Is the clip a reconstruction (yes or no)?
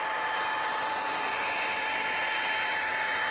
no